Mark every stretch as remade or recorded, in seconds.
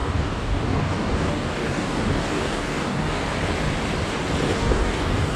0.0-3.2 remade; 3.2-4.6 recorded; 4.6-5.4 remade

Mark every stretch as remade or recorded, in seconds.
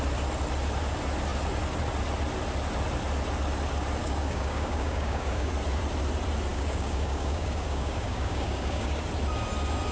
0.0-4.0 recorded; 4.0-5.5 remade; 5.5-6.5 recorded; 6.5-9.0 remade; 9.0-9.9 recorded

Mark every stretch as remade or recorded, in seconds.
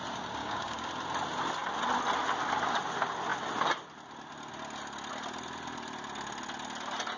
0.0-0.4 recorded; 0.4-0.9 remade; 0.9-7.2 recorded